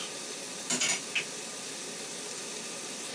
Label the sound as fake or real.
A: real